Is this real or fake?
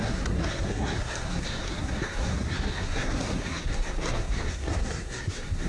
fake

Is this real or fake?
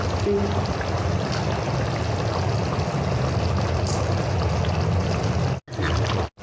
real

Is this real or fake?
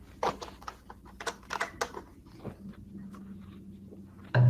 real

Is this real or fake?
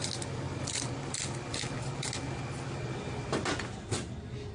real